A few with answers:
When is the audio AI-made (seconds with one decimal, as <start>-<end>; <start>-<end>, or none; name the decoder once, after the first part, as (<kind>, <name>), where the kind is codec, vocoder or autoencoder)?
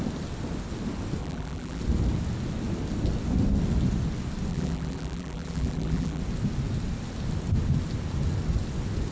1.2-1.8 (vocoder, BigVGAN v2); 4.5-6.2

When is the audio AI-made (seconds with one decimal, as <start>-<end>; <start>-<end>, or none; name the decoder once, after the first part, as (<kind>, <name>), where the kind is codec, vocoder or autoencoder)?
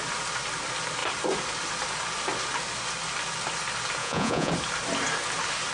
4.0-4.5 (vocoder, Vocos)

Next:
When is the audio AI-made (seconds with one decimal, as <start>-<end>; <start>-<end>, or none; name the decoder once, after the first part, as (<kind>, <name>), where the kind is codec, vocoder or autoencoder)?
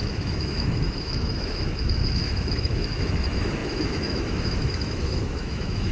0.0-5.9 (autoencoder, DAC-VAE)